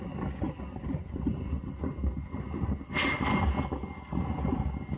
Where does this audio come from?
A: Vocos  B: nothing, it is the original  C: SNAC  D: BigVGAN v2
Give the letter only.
B